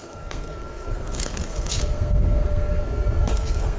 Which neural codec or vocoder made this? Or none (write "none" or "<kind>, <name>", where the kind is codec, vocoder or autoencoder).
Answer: codec, SNAC